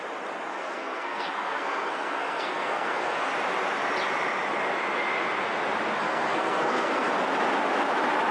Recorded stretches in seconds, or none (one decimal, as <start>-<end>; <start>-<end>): 0.0-0.5; 3.3-6.0; 7.1-8.3